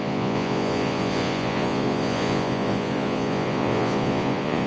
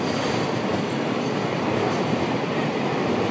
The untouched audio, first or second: second